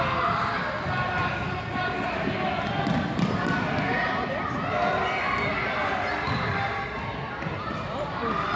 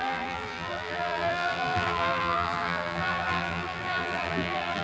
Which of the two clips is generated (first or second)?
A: second